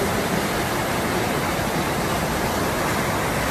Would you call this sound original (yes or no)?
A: yes